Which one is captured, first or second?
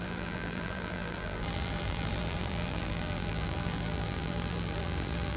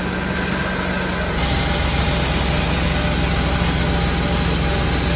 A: second